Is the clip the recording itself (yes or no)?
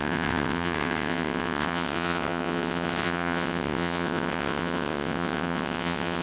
no